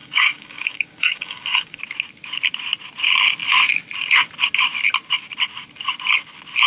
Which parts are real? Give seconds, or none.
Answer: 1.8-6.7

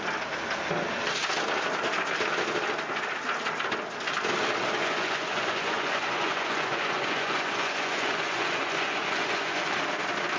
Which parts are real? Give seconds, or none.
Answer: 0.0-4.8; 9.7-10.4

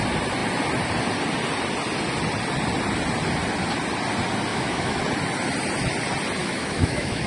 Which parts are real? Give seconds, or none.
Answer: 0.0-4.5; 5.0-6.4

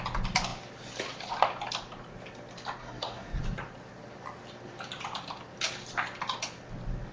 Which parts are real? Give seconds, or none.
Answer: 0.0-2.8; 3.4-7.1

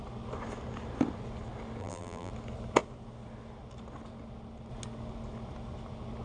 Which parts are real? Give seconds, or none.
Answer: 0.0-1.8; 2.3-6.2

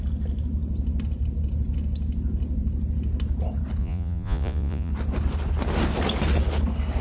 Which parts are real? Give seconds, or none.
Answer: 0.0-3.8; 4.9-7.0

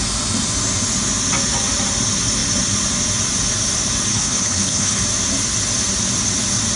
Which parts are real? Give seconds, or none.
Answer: 0.0-4.1; 5.0-6.8

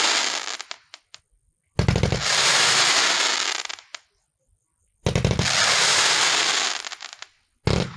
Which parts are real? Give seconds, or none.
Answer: 0.0-8.0